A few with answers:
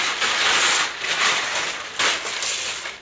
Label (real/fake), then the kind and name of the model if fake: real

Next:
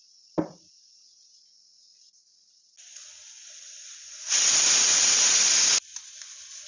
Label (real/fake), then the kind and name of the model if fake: real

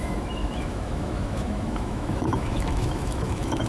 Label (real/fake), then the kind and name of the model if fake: fake, autoencoder, DAC-VAE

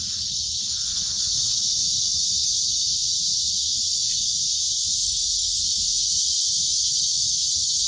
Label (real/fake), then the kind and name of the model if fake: fake, autoencoder, DAC-VAE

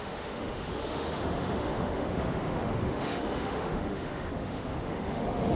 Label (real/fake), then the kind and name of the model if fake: fake, autoencoder, DAC-VAE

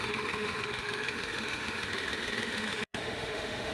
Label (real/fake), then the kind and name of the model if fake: fake, autoencoder, DAC-VAE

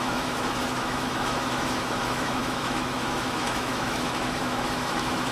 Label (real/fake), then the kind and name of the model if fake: fake, autoencoder, DAC-VAE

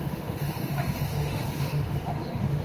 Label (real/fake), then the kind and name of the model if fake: fake, autoencoder, DAC-VAE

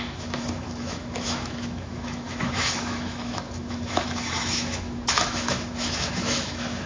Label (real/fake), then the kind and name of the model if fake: fake, autoencoder, DAC-VAE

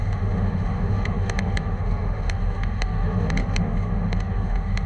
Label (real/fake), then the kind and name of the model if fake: fake, autoencoder, DAC-VAE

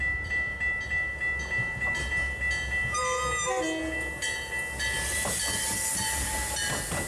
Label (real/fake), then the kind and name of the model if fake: real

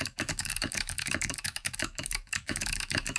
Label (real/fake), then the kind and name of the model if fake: fake, autoencoder, DAC-VAE